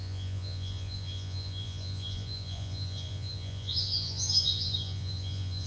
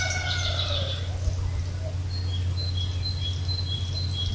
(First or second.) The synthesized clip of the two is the first